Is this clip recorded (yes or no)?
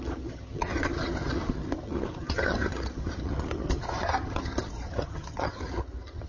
no